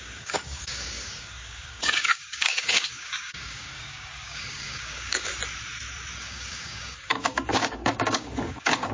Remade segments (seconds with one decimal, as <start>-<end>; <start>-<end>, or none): 0.0-5.3; 6.2-8.9